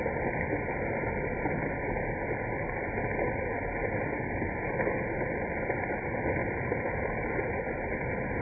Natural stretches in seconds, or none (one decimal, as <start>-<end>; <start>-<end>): 0.0-6.4; 7.1-8.4